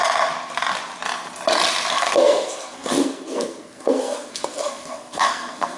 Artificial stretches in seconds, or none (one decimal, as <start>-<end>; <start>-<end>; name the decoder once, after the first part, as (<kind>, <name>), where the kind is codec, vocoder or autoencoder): 1.9-5.8 (codec, SNAC)